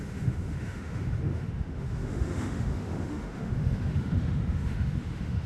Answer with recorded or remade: remade